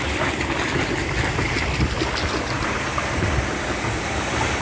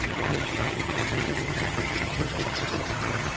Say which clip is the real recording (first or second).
first